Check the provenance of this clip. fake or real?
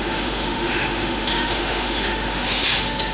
fake